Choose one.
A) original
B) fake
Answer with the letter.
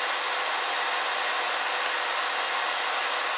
A